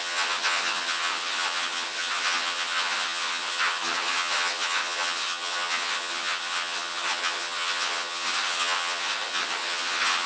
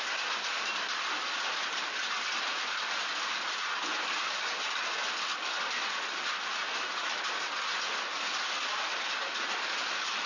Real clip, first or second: second